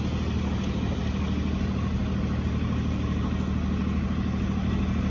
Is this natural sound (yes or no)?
yes